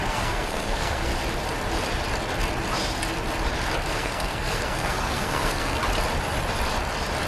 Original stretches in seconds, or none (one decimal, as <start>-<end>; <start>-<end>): 1.1-3.9; 5.8-7.3